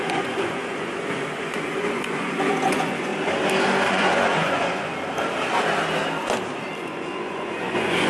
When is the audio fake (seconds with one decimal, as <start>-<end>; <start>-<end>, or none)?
0.0-3.1; 3.9-4.9; 6.8-8.1